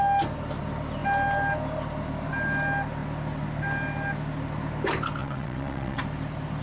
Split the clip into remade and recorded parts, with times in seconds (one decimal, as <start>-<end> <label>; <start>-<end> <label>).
0.0-5.2 recorded; 5.2-6.0 remade; 6.0-6.6 recorded